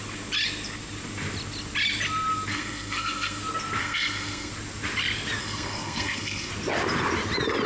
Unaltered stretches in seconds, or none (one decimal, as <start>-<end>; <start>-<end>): 0.0-2.5; 3.4-3.8; 4.5-5.4; 6.5-7.7